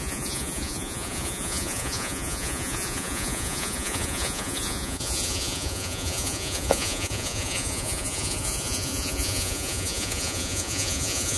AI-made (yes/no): yes